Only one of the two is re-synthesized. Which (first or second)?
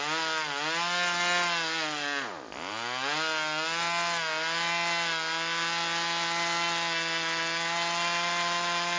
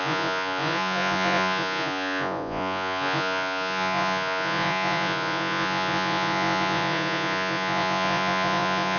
second